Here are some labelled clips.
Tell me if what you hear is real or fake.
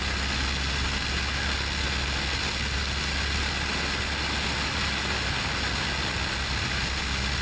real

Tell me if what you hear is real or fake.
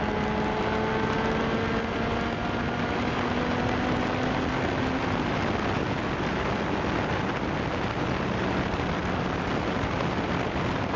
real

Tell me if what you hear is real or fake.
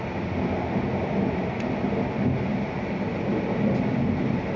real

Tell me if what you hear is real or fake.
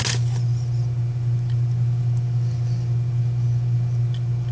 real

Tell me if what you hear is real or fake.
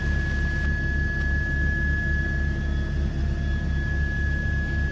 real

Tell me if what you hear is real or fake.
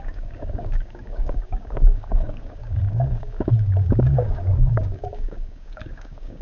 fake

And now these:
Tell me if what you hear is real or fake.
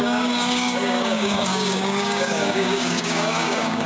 fake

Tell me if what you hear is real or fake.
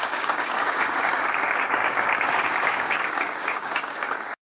fake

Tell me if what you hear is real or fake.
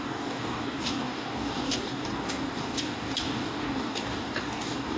fake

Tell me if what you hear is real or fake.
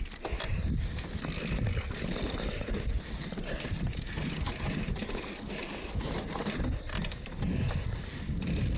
real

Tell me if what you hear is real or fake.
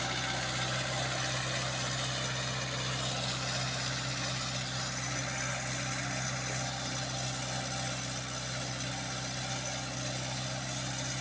real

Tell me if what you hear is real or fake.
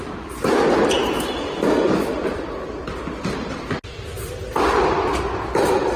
real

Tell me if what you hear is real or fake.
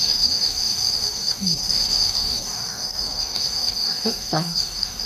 fake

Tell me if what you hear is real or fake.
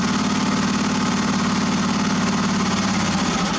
real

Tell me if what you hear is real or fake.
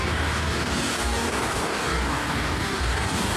fake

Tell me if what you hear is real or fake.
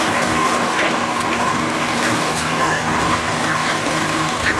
fake